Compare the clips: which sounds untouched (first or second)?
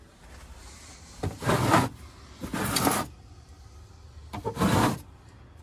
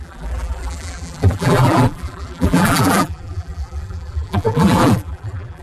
first